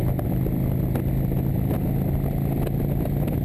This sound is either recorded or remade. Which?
recorded